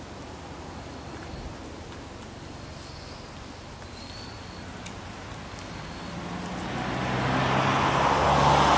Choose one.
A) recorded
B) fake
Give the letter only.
A